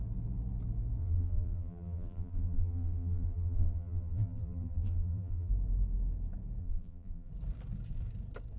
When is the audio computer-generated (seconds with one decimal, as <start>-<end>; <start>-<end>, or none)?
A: 1.0-5.5; 6.6-7.3